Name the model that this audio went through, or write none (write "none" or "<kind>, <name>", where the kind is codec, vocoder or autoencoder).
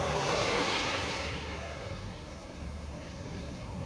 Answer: codec, SNAC